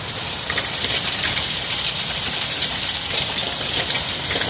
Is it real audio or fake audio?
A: real